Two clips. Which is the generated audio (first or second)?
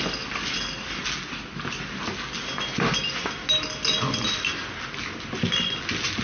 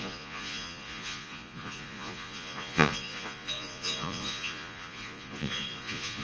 second